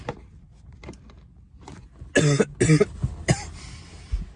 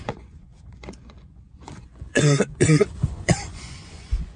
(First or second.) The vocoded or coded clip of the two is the second